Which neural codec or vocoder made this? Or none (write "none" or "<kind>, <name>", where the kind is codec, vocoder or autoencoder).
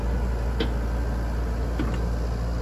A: none